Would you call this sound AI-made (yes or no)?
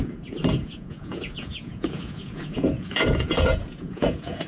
yes